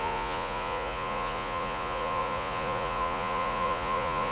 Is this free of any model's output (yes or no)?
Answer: no